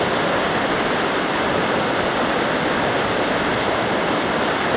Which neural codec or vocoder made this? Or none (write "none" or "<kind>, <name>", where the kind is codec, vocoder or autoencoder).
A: vocoder, BigVGAN v2